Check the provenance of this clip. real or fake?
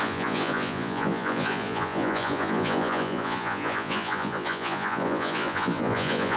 fake